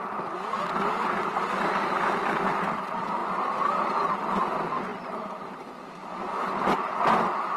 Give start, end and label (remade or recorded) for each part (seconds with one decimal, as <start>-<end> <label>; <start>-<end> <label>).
0.0-7.6 recorded